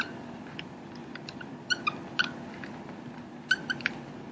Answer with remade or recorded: recorded